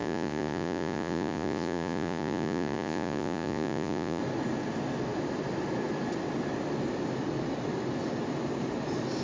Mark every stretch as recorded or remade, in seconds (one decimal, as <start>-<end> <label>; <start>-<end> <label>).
0.0-4.2 remade; 4.2-9.2 recorded